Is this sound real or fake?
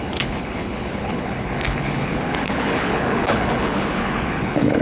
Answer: fake